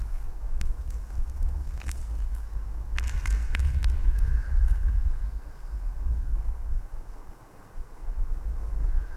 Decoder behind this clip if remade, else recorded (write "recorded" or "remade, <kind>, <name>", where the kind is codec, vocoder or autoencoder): remade, codec, SNAC